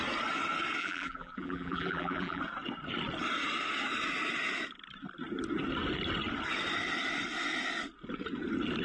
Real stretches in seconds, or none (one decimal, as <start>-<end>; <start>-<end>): 0.0-0.8; 2.4-8.8